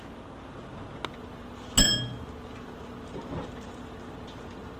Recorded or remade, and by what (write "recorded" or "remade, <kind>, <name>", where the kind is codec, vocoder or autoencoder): recorded